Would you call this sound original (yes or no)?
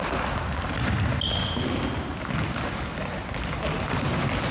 yes